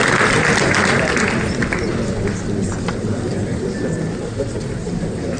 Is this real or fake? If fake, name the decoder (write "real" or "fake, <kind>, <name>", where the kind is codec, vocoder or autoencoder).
real